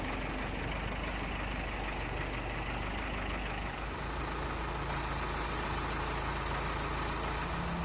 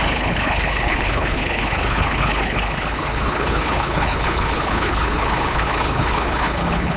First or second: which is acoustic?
first